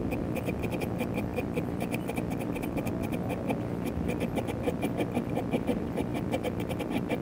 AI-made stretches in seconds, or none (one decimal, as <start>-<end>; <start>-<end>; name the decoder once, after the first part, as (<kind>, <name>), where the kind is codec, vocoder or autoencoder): none